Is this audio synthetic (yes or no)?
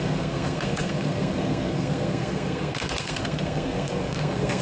yes